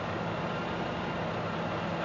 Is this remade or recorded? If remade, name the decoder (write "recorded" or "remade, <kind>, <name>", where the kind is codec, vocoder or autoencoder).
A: recorded